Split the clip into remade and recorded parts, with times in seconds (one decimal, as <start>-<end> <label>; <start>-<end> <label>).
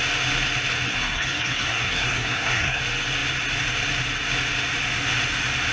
0.0-0.9 recorded; 0.9-2.8 remade; 2.8-5.7 recorded